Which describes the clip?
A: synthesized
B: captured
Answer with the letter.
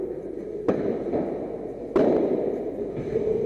B